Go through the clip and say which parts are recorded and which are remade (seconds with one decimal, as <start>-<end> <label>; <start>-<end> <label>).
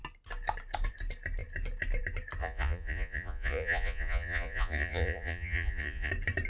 0.0-2.4 recorded; 2.4-6.1 remade; 6.1-6.5 recorded